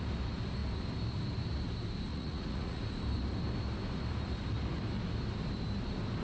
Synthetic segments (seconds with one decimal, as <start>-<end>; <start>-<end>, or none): 2.1-2.8